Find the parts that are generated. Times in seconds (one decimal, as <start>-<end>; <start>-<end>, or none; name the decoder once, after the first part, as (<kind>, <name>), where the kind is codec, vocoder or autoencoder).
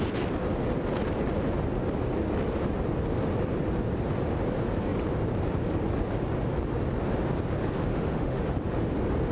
7.9-8.4 (autoencoder, DAC-VAE)